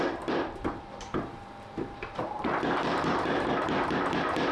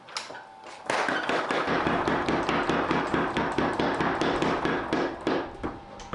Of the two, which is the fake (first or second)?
first